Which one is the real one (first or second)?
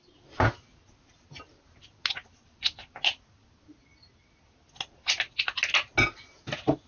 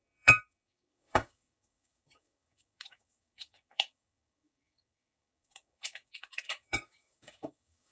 first